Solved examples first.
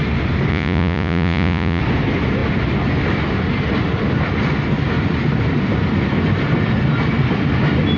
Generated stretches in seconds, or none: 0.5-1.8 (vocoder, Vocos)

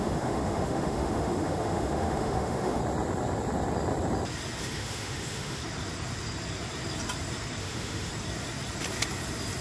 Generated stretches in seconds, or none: 0.0-2.8 (autoencoder, DAC-VAE); 4.6-5.6; 7.6-8.1

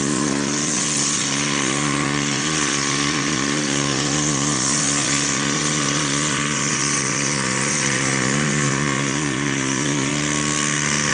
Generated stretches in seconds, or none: 0.0-10.1 (vocoder, Vocos)

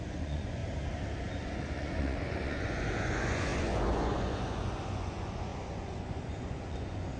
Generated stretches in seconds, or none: 0.0-0.6 (vocoder, Vocos); 1.2-7.2

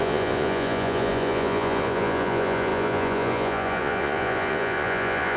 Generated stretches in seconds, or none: 0.0-5.4 (vocoder, Vocos)

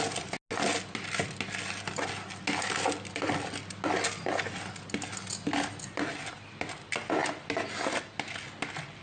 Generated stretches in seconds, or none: none